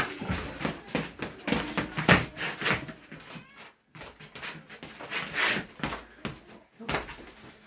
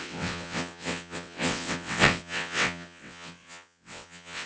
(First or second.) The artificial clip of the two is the second